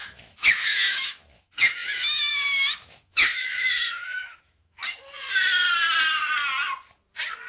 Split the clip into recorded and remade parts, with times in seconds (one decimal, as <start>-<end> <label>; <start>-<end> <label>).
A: 0.0-4.8 remade; 4.8-7.5 recorded